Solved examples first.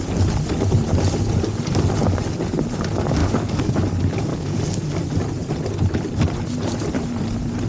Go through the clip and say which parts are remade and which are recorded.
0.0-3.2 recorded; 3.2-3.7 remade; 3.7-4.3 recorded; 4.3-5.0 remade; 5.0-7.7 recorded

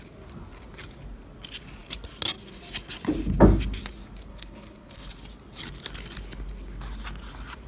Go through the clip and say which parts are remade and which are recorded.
0.0-4.3 recorded; 4.3-5.1 remade; 5.1-7.7 recorded

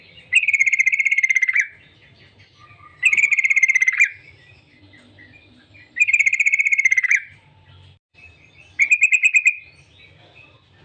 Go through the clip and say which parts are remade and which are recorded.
0.0-0.6 recorded; 0.6-1.2 remade; 1.2-2.6 recorded; 2.6-7.5 remade; 7.5-10.8 recorded

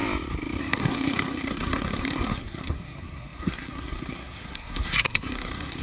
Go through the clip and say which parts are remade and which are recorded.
0.0-0.6 recorded; 0.6-5.8 remade

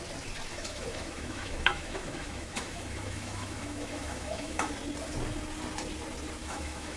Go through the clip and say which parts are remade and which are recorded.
0.0-0.5 recorded; 0.5-4.7 remade; 4.7-6.4 recorded; 6.4-7.0 remade

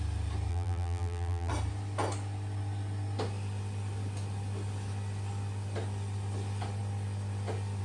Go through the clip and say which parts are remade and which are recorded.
0.0-0.5 recorded; 0.5-1.5 remade; 1.5-7.8 recorded